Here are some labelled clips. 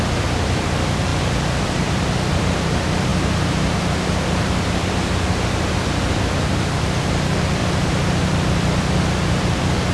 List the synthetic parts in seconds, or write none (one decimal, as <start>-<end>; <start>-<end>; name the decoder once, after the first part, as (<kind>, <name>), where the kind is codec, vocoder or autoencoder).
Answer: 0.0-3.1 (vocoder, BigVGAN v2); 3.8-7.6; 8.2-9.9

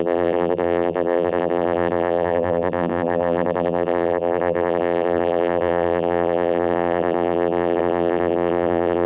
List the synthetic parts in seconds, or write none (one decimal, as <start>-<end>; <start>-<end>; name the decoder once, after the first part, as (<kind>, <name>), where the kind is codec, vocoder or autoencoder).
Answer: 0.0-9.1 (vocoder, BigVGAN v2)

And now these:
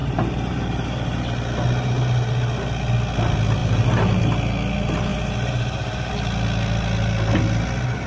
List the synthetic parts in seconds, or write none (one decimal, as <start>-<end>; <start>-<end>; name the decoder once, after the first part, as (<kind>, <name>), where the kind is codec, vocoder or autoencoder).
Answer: 0.0-1.2 (vocoder, BigVGAN v2); 3.6-4.2; 5.1-6.1

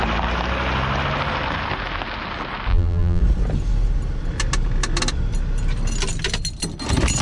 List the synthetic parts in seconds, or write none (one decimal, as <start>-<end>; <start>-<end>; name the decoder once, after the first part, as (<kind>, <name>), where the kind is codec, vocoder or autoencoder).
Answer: 2.7-3.2 (vocoder, BigVGAN v2)